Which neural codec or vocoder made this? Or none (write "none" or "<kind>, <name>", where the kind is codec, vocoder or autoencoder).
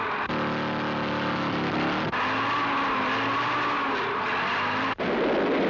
none